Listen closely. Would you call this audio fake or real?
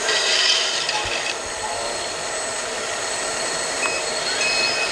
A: fake